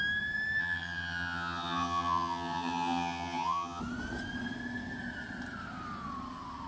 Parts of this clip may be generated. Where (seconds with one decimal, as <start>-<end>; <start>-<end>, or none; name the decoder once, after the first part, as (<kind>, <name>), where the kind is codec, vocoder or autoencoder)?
0.6-3.8 (vocoder, HiFi-GAN)